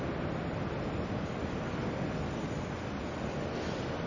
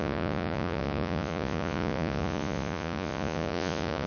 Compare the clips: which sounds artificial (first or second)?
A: second